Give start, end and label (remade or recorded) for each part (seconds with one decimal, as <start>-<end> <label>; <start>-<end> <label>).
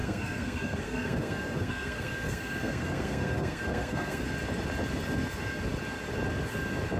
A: 0.0-4.2 remade; 4.2-7.0 recorded